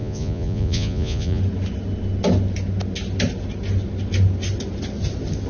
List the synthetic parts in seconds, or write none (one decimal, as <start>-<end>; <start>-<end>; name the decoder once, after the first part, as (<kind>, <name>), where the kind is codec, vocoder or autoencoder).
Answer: 0.0-1.4 (vocoder, Vocos)